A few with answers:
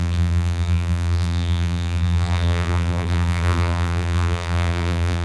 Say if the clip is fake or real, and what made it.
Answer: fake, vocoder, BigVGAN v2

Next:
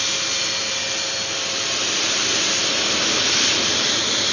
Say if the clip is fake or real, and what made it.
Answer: real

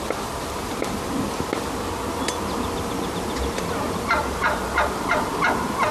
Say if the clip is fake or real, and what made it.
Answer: fake, vocoder, BigVGAN v2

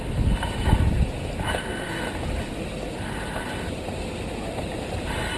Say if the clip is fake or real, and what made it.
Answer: real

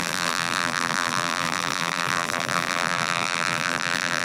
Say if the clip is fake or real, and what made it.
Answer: fake, vocoder, BigVGAN v2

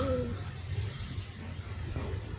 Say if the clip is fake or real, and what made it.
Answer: fake, vocoder, BigVGAN v2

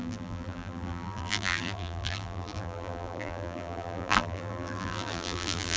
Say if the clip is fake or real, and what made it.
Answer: fake, vocoder, BigVGAN v2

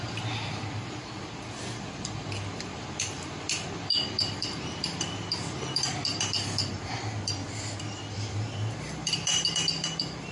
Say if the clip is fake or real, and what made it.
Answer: fake, vocoder, BigVGAN v2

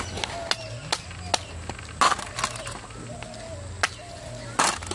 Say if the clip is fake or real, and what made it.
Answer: real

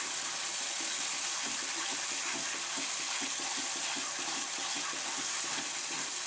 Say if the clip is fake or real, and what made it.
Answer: real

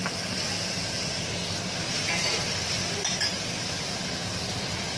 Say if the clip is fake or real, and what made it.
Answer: real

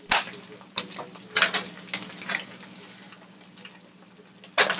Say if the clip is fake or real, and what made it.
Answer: real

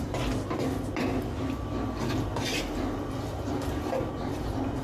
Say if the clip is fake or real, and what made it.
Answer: real